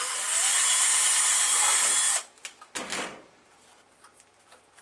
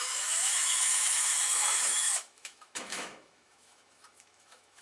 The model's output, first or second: second